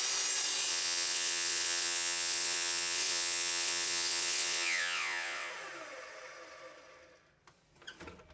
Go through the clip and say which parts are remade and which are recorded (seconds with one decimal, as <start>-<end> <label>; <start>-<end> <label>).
0.0-0.7 recorded; 0.7-5.5 remade; 5.5-8.3 recorded